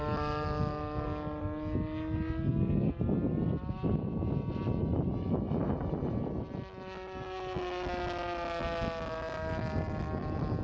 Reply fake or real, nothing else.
real